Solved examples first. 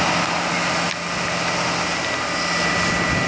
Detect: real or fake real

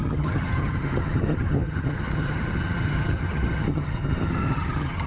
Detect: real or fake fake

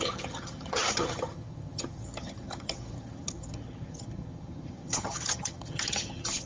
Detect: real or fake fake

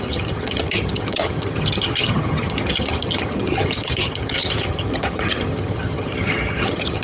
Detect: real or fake fake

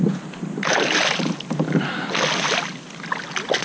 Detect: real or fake real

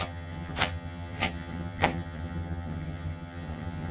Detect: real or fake fake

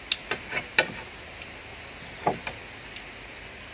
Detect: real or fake real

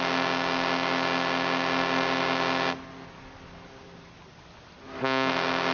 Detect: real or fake real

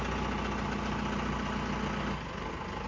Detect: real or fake real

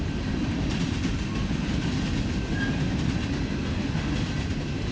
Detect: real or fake real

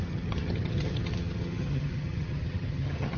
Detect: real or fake fake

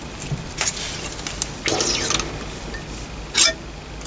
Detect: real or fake real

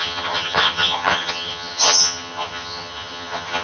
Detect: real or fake fake